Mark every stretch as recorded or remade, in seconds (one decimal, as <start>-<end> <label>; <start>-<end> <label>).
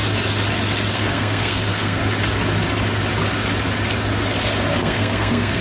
0.0-0.9 recorded; 0.9-2.0 remade; 2.0-4.8 recorded; 4.8-5.6 remade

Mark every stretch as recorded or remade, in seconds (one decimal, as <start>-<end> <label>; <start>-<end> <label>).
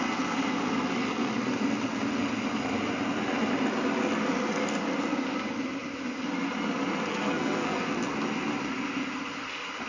0.0-7.1 recorded; 7.1-7.9 remade; 7.9-9.9 recorded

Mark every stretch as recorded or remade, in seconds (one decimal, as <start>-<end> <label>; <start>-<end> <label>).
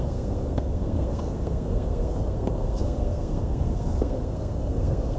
0.0-5.2 remade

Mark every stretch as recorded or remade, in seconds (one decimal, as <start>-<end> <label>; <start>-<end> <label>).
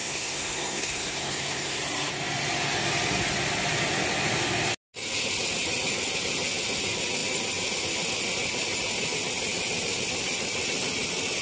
0.0-1.8 remade; 1.8-11.4 recorded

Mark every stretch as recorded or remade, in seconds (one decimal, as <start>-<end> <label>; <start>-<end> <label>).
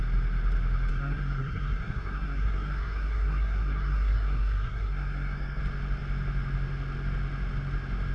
0.0-0.9 recorded; 0.9-5.6 remade; 5.6-8.1 recorded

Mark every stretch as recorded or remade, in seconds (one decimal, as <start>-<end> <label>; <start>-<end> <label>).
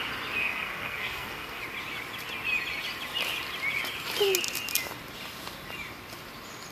0.0-0.4 recorded; 0.4-1.6 remade; 1.6-6.7 recorded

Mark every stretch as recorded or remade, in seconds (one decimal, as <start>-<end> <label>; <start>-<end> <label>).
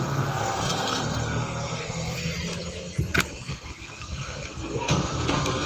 0.0-2.3 remade; 2.3-3.3 recorded; 3.3-5.7 remade